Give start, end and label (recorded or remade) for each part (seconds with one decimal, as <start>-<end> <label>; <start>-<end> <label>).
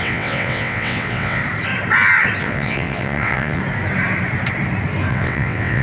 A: 0.0-1.4 remade; 1.4-2.4 recorded; 2.4-3.6 remade; 3.6-5.1 recorded; 5.1-5.8 remade